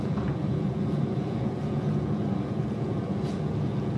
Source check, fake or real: fake